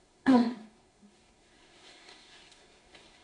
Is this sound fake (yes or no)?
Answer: yes